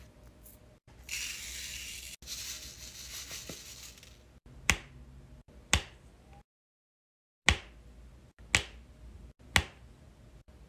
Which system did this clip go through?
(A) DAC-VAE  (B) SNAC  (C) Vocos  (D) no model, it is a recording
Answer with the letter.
D